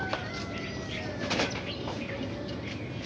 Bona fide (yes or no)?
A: yes